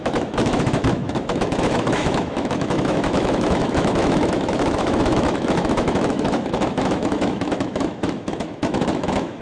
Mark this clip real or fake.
fake